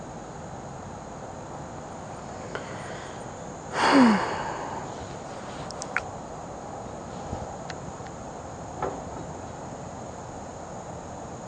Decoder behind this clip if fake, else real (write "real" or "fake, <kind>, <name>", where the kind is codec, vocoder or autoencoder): real